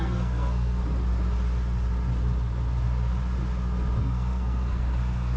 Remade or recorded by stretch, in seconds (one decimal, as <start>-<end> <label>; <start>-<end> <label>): 0.0-0.8 remade; 0.8-4.0 recorded; 4.0-5.4 remade

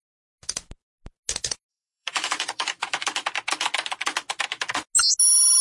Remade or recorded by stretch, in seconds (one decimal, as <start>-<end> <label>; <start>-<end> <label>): 0.0-1.7 recorded; 1.7-2.9 remade; 2.9-5.6 recorded

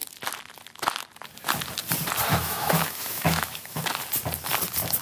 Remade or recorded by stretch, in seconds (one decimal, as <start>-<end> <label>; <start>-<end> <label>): 0.0-2.3 recorded; 2.3-3.8 remade; 3.8-5.0 recorded

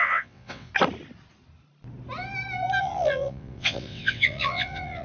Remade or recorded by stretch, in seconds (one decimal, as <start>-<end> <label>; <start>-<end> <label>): 0.0-0.7 remade; 0.7-2.8 recorded; 2.8-5.0 remade

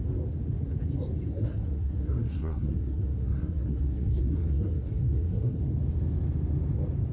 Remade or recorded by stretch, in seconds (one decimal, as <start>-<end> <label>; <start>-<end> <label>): 0.0-1.3 recorded; 1.3-5.6 remade; 5.6-7.1 recorded

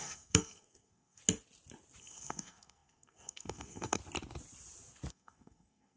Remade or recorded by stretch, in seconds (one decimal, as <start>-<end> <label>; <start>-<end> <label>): 0.0-1.2 remade; 1.2-2.0 recorded; 2.0-4.0 remade; 4.0-5.1 recorded; 5.1-6.0 remade

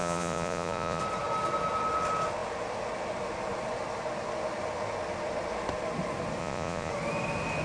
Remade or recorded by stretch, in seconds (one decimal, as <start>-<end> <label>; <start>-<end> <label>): 0.0-1.0 remade; 1.0-6.4 recorded; 6.4-6.9 remade; 6.9-7.6 recorded

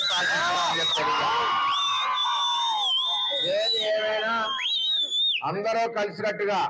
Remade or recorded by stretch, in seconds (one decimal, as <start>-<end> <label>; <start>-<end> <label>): 0.0-6.7 recorded